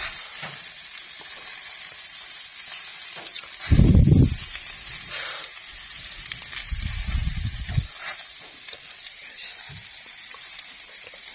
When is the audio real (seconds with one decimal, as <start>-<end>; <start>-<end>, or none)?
2.5-3.7

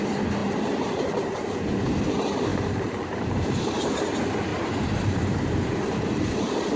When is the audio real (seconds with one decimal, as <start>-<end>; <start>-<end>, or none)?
0.0-2.5; 3.9-4.5; 6.0-6.8

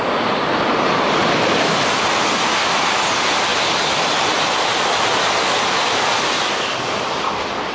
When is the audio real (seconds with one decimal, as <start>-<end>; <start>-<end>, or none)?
0.0-7.7

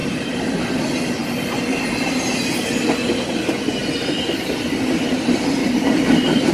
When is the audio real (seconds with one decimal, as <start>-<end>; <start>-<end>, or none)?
0.0-5.6